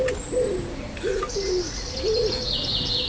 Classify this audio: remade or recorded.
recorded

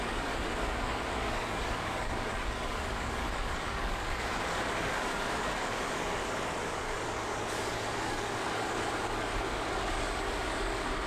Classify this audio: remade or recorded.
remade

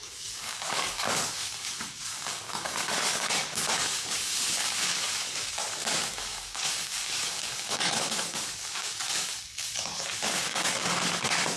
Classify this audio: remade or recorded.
remade